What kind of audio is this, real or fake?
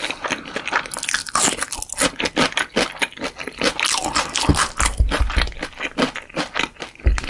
real